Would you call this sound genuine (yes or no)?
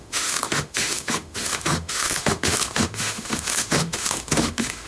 no